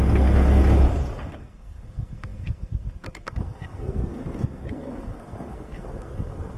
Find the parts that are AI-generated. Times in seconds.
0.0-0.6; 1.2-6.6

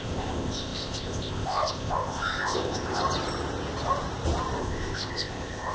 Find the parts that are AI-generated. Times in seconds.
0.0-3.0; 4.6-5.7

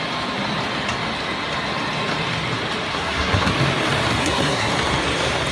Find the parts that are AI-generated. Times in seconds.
2.9-3.5; 4.2-4.7

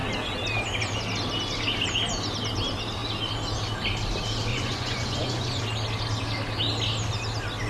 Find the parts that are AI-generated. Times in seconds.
4.5-5.6